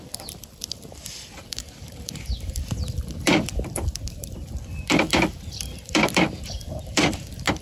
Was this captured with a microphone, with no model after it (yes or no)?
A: no